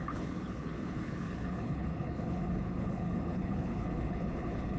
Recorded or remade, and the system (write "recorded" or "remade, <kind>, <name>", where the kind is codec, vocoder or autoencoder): remade, codec, HILCodec